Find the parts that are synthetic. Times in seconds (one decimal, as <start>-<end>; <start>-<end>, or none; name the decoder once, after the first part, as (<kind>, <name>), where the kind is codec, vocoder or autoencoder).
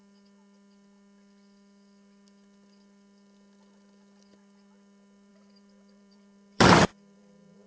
5.3-7.7 (vocoder, BigVGAN v2)